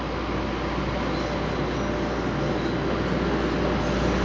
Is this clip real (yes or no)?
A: yes